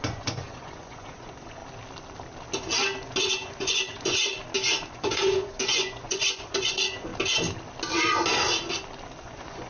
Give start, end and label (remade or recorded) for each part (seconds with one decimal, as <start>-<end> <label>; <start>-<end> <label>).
0.0-1.6 remade; 1.6-3.2 recorded; 3.2-4.3 remade; 4.3-4.9 recorded; 4.9-7.1 remade; 7.1-9.2 recorded; 9.2-9.7 remade